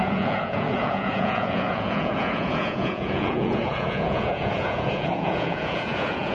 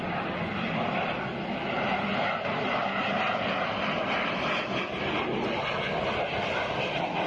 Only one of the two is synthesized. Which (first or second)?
first